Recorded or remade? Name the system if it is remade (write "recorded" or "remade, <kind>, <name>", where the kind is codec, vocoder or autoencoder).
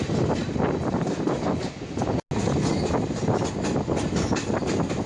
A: recorded